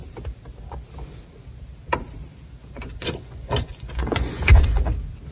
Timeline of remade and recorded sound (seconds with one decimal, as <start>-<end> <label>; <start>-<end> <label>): 0.0-2.6 recorded; 2.6-4.8 remade; 4.8-5.3 recorded